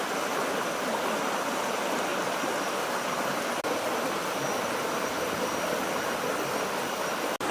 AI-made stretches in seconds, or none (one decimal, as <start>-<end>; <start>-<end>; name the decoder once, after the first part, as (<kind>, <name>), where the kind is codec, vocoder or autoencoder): none